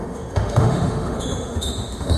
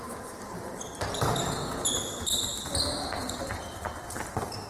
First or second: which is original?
second